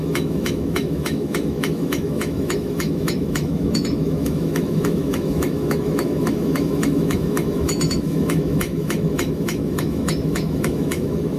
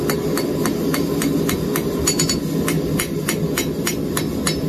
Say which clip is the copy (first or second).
first